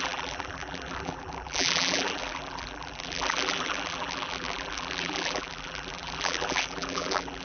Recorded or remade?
remade